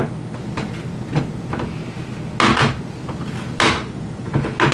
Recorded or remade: recorded